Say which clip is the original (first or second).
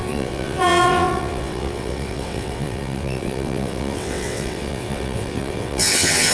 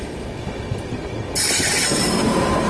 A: second